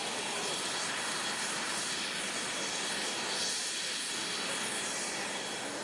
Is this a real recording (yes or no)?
yes